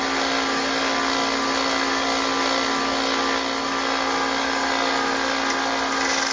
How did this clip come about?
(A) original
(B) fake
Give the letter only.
A